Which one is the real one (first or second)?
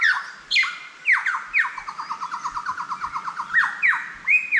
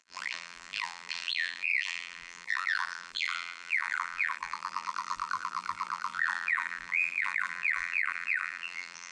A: first